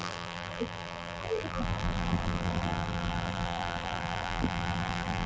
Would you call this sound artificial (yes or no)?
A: yes